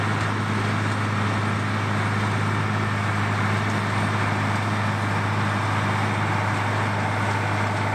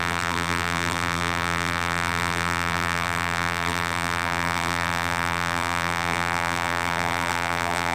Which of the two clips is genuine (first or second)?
first